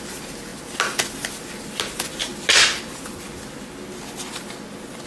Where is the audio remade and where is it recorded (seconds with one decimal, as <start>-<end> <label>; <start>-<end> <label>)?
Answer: 0.0-5.1 recorded